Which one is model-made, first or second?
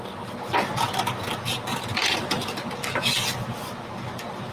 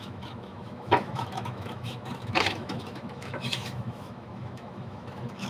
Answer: second